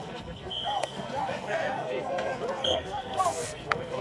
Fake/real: fake